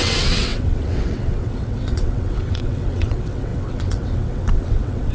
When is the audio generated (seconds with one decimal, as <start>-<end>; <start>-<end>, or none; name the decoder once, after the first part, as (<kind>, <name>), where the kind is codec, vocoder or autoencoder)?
0.0-5.1 (vocoder, WaveNeXt)